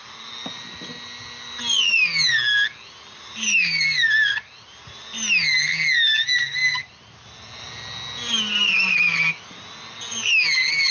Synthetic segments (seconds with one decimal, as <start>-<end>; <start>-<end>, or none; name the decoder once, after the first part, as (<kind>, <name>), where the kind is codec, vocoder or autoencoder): none